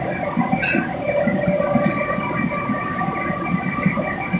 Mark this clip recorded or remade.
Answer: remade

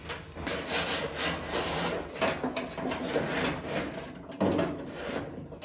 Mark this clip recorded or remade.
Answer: recorded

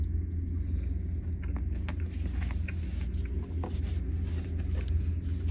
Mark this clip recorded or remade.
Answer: recorded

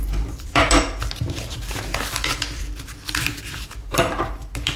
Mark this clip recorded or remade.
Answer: remade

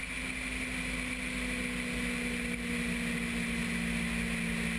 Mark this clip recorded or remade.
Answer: recorded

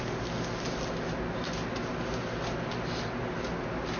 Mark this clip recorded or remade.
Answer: recorded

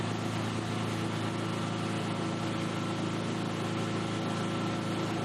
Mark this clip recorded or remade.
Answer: recorded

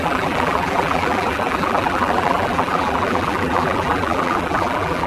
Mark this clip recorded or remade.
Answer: remade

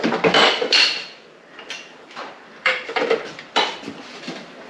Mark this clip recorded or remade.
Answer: remade